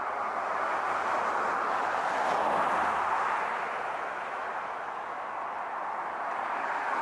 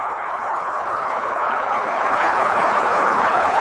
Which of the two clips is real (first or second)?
first